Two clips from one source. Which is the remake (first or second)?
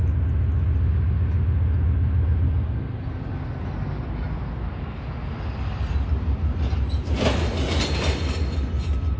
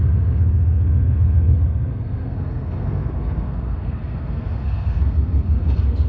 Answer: second